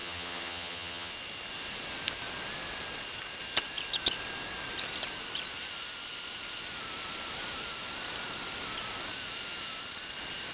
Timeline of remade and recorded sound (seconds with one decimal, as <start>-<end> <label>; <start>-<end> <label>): 0.0-1.1 remade; 1.1-10.5 recorded

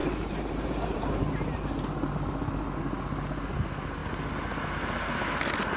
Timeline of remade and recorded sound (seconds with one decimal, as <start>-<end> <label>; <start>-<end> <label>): 0.0-1.6 remade; 1.6-5.8 recorded

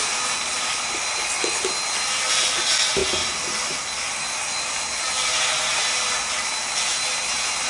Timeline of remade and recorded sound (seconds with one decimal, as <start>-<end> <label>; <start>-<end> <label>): 0.0-7.7 recorded

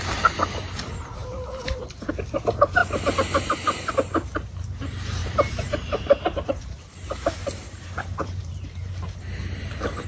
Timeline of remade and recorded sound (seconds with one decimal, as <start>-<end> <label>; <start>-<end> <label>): 0.0-1.2 recorded; 1.2-2.1 remade; 2.1-5.2 recorded; 5.2-9.2 remade; 9.2-10.1 recorded

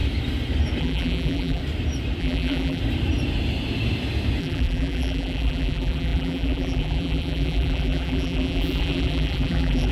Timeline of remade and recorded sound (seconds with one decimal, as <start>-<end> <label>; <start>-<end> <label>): 0.0-0.8 recorded; 0.8-1.6 remade; 1.6-2.2 recorded; 2.2-2.8 remade; 2.8-4.4 recorded; 4.4-9.9 remade

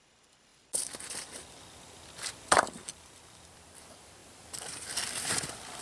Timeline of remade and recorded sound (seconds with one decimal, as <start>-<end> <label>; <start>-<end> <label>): 0.0-0.5 recorded; 0.5-3.8 remade; 3.8-4.2 recorded; 4.2-5.8 remade

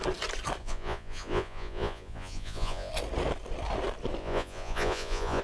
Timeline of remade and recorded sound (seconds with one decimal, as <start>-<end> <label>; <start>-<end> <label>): 0.0-0.6 recorded; 0.6-2.9 remade; 2.9-4.2 recorded; 4.2-5.4 remade

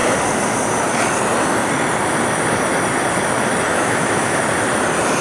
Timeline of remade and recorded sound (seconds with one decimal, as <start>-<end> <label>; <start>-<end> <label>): 0.0-3.7 recorded; 3.7-4.4 remade; 4.4-5.2 recorded